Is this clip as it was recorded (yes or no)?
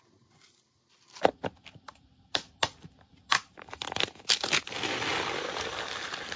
yes